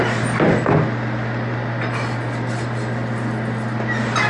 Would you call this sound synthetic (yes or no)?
no